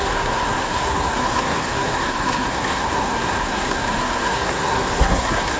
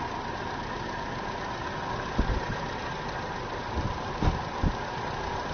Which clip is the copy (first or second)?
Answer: first